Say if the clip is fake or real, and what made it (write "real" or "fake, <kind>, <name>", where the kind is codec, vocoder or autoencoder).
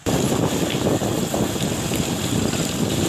real